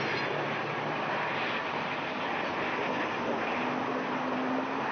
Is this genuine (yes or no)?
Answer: yes